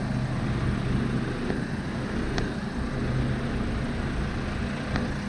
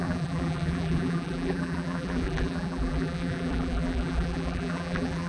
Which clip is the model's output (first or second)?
second